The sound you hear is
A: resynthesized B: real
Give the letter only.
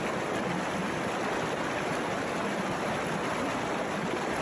B